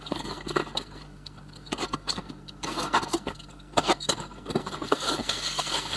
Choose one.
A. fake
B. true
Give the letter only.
A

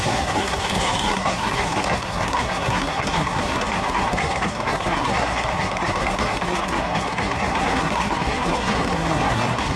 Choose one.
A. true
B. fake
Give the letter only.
B